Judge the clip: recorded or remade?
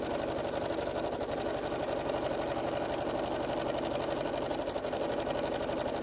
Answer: recorded